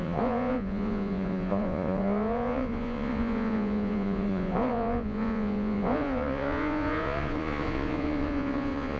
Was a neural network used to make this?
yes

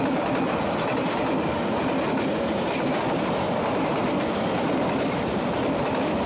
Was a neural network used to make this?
no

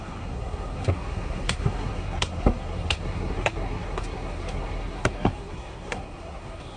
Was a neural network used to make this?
yes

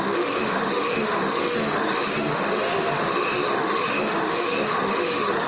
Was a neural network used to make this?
yes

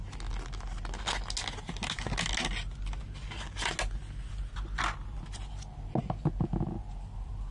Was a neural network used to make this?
no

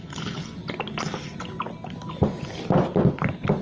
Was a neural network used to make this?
no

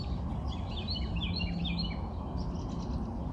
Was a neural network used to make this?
no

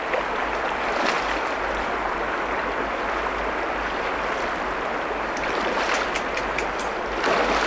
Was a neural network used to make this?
no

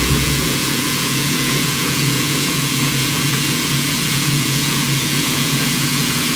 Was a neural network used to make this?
yes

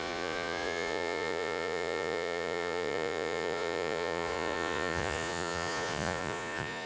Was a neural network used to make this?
yes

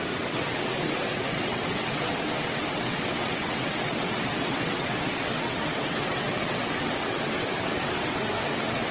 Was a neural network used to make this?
yes